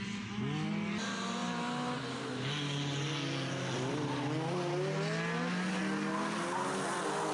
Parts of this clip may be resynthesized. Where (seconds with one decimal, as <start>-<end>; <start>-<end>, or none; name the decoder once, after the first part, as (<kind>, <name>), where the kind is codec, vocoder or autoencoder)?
none